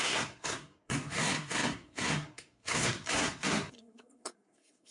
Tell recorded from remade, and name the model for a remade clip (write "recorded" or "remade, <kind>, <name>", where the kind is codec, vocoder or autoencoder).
remade, codec, SNAC